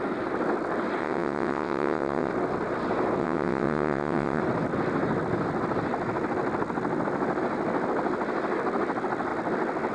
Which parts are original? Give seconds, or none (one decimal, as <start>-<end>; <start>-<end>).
0.0-1.0; 2.3-3.2; 4.4-9.9